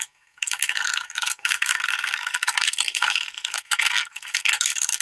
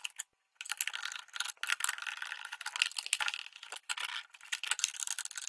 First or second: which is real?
second